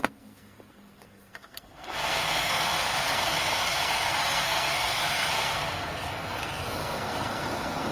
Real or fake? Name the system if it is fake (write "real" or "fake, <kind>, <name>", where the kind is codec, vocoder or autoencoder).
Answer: fake, codec, SNAC